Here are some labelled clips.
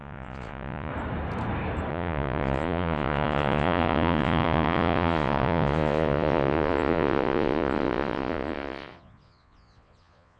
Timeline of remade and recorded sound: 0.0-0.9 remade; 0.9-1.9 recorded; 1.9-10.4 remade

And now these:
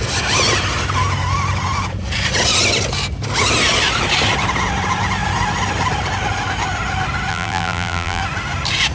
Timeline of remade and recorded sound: 0.0-7.3 recorded; 7.3-8.2 remade; 8.2-8.9 recorded